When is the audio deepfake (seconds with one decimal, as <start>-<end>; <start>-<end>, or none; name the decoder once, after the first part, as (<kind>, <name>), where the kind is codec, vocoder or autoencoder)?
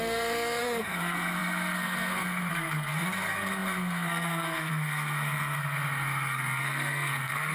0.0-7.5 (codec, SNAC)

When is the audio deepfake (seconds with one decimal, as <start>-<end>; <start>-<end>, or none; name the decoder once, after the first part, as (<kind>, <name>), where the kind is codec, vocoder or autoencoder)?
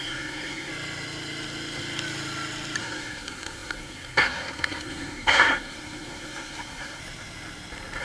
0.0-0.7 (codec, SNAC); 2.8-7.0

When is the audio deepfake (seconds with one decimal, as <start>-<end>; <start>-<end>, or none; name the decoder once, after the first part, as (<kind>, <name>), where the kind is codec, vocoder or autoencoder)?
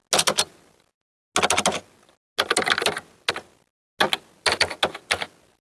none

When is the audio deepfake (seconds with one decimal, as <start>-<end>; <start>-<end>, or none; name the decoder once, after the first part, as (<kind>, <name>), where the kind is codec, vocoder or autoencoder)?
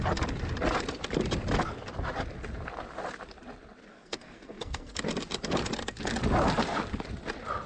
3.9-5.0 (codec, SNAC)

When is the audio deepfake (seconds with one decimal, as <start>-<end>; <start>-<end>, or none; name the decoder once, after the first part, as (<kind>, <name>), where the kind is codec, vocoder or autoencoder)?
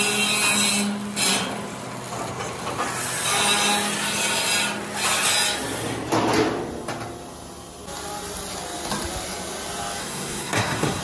10.0-11.0 (codec, SNAC)